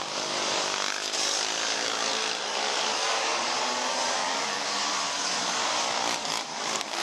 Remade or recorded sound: remade